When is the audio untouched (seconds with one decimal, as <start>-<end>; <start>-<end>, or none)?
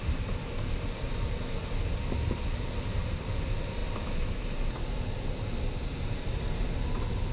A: 0.0-7.3